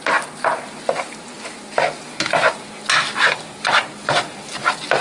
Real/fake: real